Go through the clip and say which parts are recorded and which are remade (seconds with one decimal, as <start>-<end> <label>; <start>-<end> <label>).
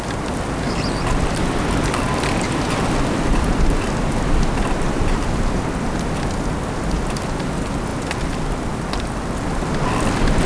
0.0-10.5 recorded